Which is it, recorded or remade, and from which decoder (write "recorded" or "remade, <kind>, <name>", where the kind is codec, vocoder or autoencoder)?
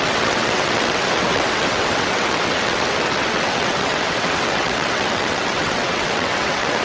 remade, vocoder, WaveNeXt